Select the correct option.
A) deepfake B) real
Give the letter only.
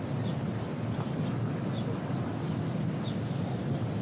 B